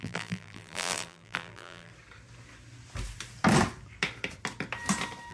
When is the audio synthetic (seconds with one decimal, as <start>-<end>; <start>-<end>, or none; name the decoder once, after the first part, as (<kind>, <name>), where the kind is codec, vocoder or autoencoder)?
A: 0.0-1.9 (vocoder, BigVGAN v2)